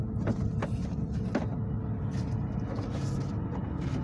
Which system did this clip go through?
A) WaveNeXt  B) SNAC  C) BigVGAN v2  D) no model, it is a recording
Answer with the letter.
D